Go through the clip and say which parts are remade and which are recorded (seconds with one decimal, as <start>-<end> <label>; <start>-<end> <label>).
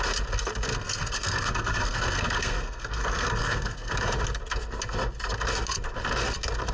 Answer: 0.0-0.7 recorded; 0.7-3.9 remade; 3.9-6.7 recorded